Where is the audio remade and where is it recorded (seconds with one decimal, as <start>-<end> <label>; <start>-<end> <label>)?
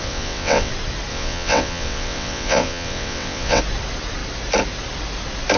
0.0-0.7 remade; 0.7-1.1 recorded; 1.1-3.6 remade; 3.6-5.6 recorded